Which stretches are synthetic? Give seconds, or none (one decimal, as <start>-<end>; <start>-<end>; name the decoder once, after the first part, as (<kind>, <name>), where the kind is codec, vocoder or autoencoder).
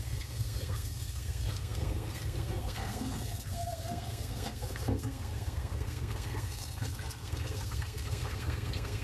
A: 0.0-9.0 (codec, SNAC)